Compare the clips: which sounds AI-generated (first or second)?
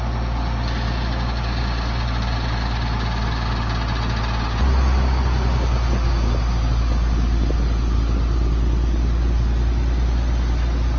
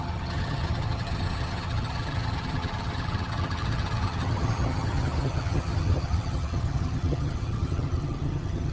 second